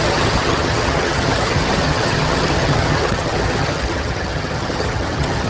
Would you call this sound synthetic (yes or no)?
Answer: yes